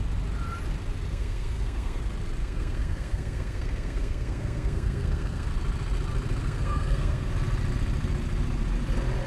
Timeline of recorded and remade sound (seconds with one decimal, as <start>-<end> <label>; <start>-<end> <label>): 0.0-1.1 recorded; 1.1-2.0 remade; 2.0-2.4 recorded; 2.4-5.5 remade; 5.5-6.4 recorded; 6.4-7.3 remade; 7.3-9.3 recorded